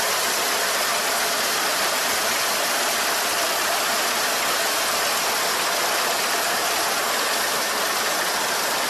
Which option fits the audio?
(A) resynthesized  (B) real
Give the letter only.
B